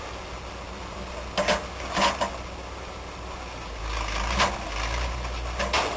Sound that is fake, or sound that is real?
real